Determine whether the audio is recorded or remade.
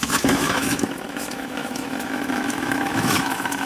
remade